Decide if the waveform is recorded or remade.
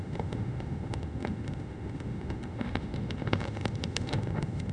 remade